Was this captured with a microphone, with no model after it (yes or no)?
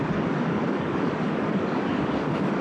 no